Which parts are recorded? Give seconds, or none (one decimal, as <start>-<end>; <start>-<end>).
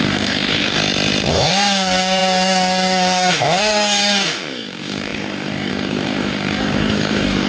0.8-1.3